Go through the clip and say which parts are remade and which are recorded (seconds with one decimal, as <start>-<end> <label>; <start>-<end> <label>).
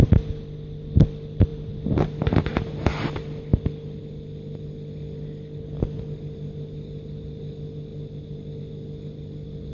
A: 0.0-9.7 recorded